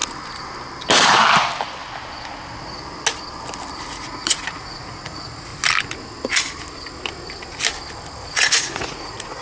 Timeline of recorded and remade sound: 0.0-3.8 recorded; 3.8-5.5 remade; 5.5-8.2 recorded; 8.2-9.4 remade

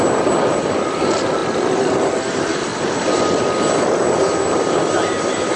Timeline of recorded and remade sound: 0.0-5.6 recorded

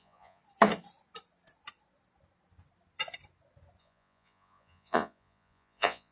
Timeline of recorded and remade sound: 0.0-0.4 remade; 0.4-3.8 recorded; 3.8-6.1 remade

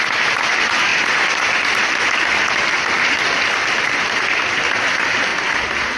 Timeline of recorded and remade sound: 0.0-6.0 recorded